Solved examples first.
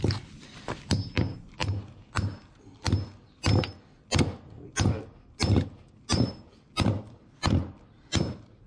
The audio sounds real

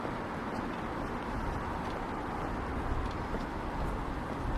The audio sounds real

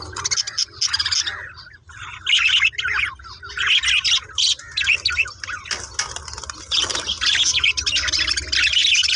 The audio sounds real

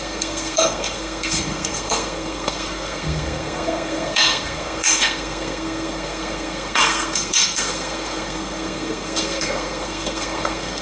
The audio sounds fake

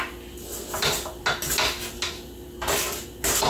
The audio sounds real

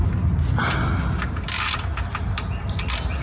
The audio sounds real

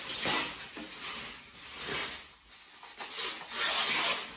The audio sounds real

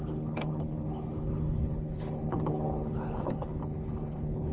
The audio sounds fake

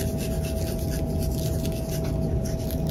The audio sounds real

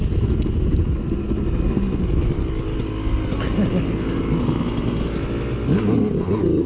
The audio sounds real